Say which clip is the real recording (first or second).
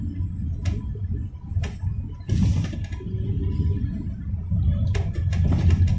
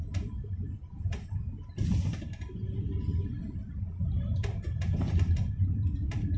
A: first